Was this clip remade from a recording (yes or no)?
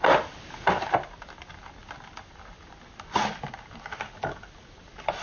no